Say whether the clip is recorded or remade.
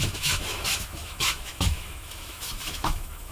remade